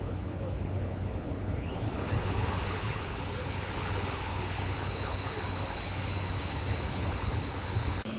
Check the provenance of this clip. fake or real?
fake